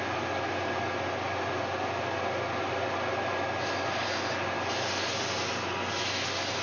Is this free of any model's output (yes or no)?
yes